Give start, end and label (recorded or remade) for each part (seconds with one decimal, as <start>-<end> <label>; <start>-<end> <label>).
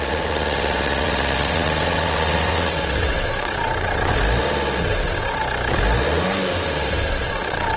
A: 0.0-4.2 remade; 4.2-4.8 recorded; 4.8-5.4 remade; 5.4-6.9 recorded; 6.9-7.8 remade